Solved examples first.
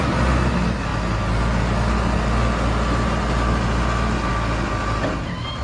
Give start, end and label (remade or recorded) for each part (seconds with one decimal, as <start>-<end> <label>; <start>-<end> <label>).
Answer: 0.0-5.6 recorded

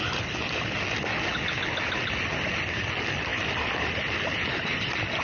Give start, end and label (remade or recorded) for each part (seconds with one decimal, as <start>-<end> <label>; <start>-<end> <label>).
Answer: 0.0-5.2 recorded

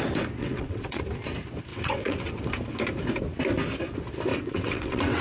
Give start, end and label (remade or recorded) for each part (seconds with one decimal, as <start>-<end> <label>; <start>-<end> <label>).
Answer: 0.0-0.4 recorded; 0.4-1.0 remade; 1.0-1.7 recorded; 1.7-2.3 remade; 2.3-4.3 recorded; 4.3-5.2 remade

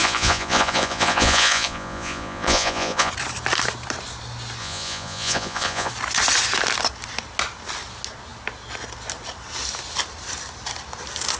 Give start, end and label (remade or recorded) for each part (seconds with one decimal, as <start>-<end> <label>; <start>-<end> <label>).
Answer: 0.0-3.1 remade; 3.1-4.6 recorded; 4.6-5.9 remade; 5.9-11.4 recorded

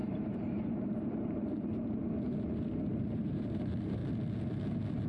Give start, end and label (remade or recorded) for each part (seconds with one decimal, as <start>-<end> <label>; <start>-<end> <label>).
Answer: 0.0-2.0 remade; 2.0-3.0 recorded; 3.0-4.0 remade; 4.0-5.1 recorded

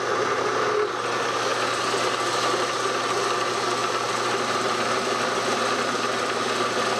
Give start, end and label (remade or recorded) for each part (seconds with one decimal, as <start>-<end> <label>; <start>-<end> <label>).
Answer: 0.0-7.0 recorded

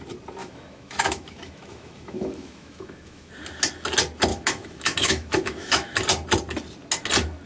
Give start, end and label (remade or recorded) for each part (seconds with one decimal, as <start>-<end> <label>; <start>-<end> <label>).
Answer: 0.0-0.4 recorded; 0.4-3.3 remade; 3.3-4.3 recorded; 4.3-6.0 remade; 6.0-7.5 recorded

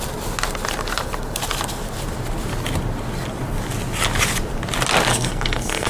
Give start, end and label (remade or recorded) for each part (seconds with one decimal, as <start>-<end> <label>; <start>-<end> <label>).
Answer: 0.0-5.1 recorded; 5.1-5.9 remade